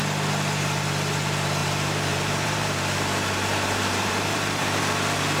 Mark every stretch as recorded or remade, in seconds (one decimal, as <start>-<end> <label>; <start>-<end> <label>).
0.0-1.6 recorded; 1.6-4.8 remade; 4.8-5.4 recorded